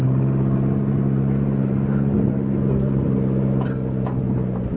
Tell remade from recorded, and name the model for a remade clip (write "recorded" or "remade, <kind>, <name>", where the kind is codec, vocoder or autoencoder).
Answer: recorded